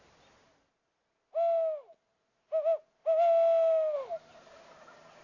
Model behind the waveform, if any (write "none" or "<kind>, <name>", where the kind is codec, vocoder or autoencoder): none